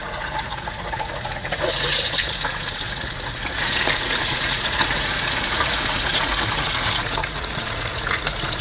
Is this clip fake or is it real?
fake